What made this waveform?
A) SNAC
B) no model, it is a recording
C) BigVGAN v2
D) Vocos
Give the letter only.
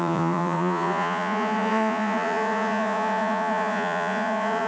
D